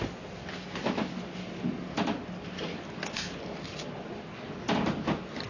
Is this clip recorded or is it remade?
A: recorded